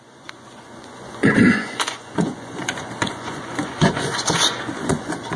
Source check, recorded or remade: remade